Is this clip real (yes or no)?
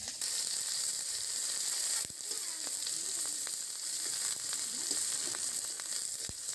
no